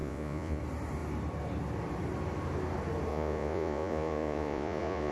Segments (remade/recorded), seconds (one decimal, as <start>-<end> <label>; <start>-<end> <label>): 0.0-0.6 remade; 0.6-3.1 recorded; 3.1-5.1 remade